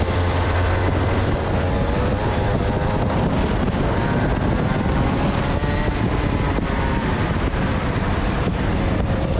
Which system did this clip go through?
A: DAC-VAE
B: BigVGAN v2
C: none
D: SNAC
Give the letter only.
B